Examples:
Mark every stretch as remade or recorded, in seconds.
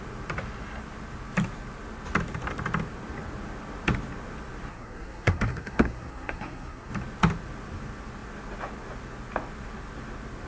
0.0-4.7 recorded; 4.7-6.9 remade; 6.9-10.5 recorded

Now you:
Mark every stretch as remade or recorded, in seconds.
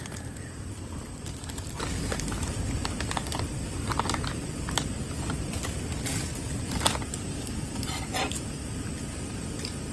0.0-9.9 recorded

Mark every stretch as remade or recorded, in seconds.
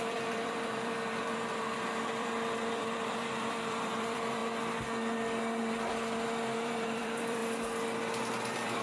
0.0-4.4 remade; 4.4-5.4 recorded; 5.4-7.4 remade; 7.4-8.3 recorded; 8.3-8.8 remade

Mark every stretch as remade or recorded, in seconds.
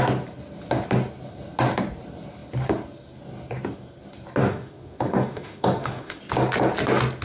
0.0-4.4 recorded; 4.4-6.2 remade; 6.2-7.2 recorded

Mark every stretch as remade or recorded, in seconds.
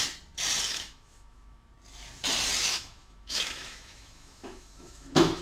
0.0-0.7 recorded; 0.7-1.7 remade; 1.7-2.6 recorded; 2.6-5.4 remade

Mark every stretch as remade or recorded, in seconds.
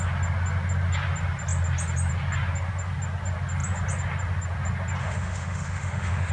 0.0-5.0 recorded; 5.0-6.3 remade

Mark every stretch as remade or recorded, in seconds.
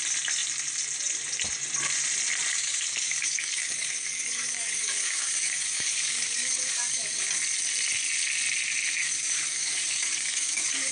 0.0-2.5 recorded; 2.5-7.3 remade; 7.3-9.0 recorded; 9.0-10.9 remade